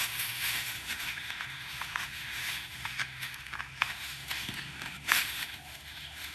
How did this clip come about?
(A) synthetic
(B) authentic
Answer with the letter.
A